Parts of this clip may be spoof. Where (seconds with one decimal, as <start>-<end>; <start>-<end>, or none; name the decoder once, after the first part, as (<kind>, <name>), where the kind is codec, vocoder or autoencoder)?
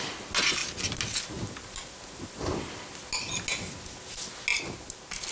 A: none